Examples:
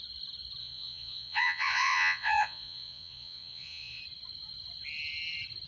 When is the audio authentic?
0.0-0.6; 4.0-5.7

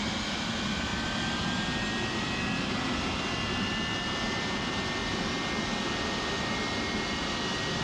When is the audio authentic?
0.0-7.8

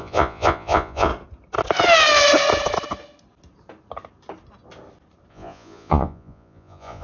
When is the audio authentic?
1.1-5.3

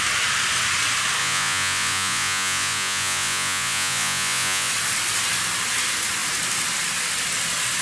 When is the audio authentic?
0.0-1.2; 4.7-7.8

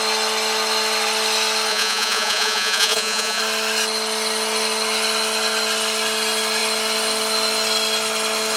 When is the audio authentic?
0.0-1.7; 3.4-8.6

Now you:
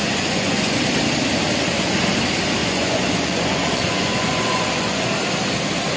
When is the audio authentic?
0.8-2.6; 5.1-6.0

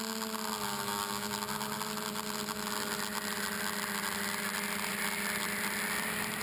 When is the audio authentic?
0.0-6.4

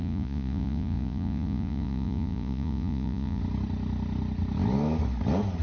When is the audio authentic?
3.4-5.6